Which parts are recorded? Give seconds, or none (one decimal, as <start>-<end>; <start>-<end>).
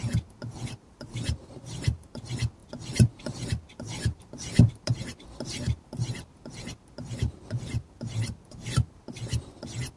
0.0-10.0